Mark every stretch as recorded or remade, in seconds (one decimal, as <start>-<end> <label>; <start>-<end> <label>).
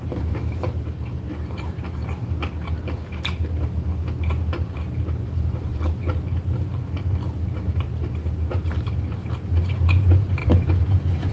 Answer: 0.0-2.0 remade; 2.0-5.2 recorded; 5.2-5.7 remade; 5.7-8.5 recorded; 8.5-11.3 remade